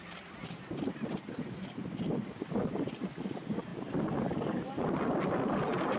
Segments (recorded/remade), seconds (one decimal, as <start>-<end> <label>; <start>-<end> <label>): 0.0-6.0 recorded